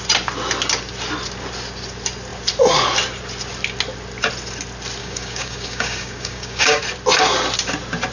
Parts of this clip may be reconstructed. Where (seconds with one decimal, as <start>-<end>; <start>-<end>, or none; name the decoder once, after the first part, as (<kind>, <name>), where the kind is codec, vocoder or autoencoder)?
5.0-6.8 (codec, DAC)